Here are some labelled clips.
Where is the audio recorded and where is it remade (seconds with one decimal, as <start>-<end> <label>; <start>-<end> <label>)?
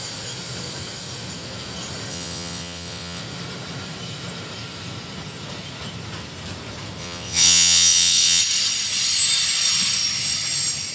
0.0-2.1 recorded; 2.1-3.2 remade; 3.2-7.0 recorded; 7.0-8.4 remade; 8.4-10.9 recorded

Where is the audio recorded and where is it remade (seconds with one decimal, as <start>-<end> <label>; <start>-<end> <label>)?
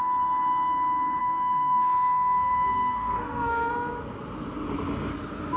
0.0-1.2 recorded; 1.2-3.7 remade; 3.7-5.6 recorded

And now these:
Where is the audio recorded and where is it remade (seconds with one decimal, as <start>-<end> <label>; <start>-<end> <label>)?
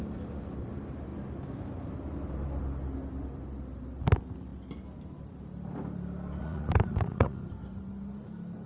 0.0-6.4 recorded; 6.4-7.4 remade; 7.4-8.7 recorded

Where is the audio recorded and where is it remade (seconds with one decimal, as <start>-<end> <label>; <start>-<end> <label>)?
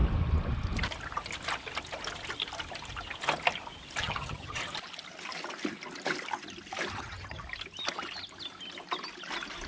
0.0-4.0 recorded; 4.0-4.6 remade; 4.6-6.9 recorded; 6.9-7.4 remade; 7.4-9.7 recorded